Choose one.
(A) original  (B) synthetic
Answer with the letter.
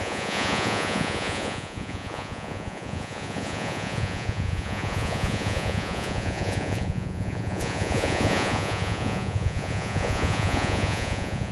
B